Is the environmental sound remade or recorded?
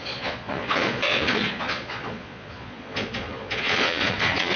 remade